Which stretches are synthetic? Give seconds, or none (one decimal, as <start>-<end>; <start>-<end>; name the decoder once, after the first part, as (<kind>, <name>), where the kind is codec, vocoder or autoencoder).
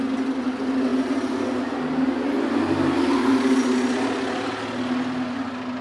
none